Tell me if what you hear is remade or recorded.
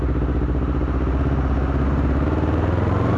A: recorded